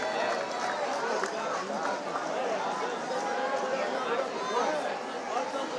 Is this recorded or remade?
recorded